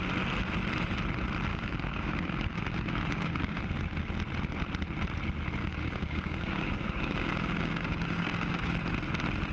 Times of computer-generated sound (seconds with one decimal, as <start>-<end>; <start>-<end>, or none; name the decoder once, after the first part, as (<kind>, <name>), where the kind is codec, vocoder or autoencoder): 1.5-3.6 (codec, DAC); 5.6-8.7